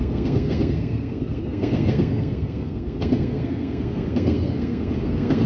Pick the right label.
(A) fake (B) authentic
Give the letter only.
A